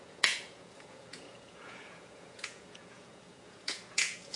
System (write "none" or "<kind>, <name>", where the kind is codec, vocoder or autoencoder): vocoder, Vocos